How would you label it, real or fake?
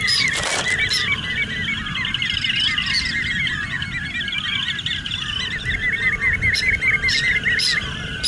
real